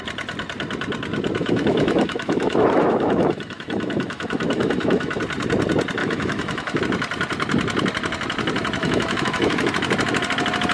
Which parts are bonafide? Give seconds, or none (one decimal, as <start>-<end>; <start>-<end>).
0.0-1.4; 5.2-6.0; 6.8-8.8; 9.7-10.7